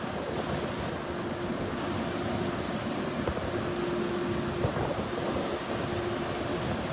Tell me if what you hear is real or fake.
real